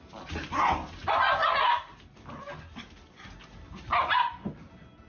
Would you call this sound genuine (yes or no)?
yes